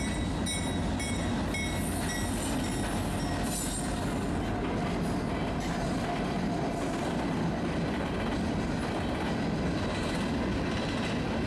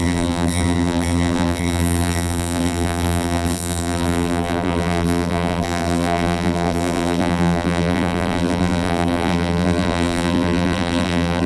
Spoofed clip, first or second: second